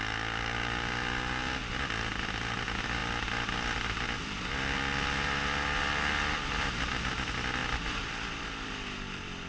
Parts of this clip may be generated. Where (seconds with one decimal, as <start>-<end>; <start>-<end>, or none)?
none